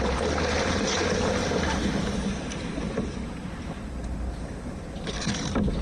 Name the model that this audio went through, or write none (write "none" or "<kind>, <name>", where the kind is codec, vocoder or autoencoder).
none